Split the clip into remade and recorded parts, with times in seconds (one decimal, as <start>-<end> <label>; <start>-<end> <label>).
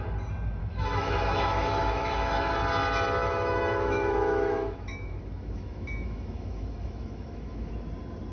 0.0-0.6 recorded; 0.6-2.5 remade; 2.5-3.2 recorded; 3.2-7.7 remade; 7.7-8.3 recorded